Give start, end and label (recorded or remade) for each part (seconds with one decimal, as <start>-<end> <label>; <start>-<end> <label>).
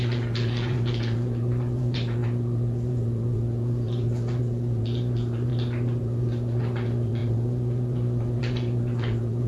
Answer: 0.0-5.5 remade; 5.5-6.0 recorded; 6.0-9.5 remade